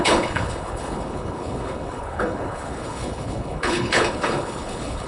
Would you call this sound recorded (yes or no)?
no